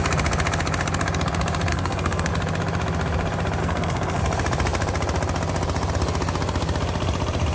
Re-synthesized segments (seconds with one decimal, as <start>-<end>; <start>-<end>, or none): 1.7-2.3; 3.6-4.2